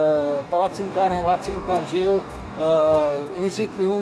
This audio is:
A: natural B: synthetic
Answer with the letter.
B